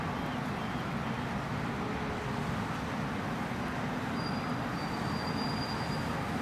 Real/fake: real